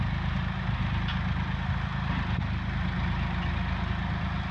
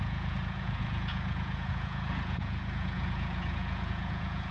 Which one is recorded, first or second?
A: first